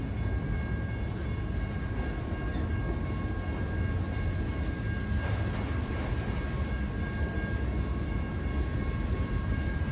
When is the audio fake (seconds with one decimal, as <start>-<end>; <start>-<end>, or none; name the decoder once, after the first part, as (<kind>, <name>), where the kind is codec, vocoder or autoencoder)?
none